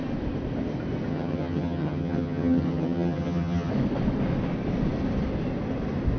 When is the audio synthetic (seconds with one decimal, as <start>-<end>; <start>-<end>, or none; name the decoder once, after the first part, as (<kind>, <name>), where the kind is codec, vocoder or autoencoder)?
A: 1.1-3.7 (vocoder, HiFi-GAN)